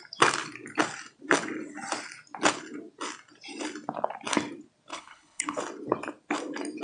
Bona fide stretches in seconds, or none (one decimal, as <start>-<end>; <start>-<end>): 0.0-4.9; 5.6-6.8